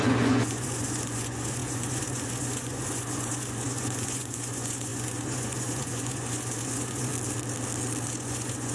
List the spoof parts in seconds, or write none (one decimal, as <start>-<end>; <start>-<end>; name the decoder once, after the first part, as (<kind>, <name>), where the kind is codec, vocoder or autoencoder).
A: 0.0-7.1 (vocoder, Vocos); 8.1-8.7